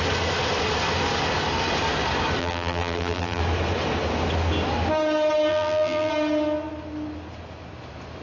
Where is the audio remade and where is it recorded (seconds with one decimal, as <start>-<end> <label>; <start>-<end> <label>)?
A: 0.0-2.4 recorded; 2.4-3.4 remade; 3.4-5.5 recorded; 5.5-6.1 remade; 6.1-8.2 recorded